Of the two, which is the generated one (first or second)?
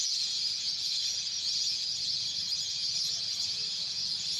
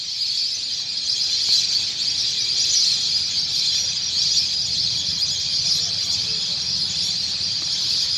first